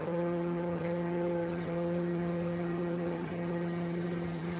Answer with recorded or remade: remade